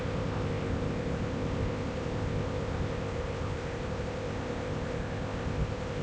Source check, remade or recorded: remade